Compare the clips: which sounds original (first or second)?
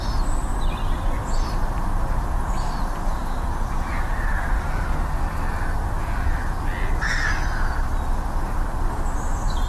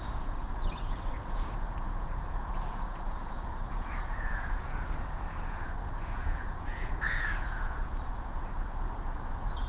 first